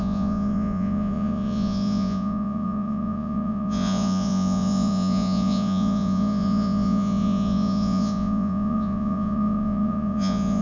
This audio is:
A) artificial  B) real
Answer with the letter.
A